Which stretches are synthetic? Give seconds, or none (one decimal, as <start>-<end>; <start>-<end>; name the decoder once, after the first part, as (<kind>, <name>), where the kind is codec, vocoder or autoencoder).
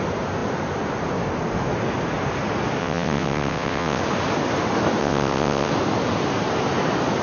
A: 2.8-4.0 (vocoder, WaveNeXt); 5.0-5.7